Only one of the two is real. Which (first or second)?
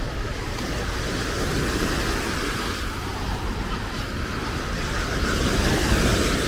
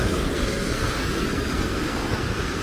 first